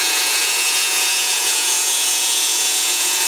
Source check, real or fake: fake